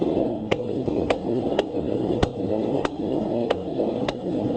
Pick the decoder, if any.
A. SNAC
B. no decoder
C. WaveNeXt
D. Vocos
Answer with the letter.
A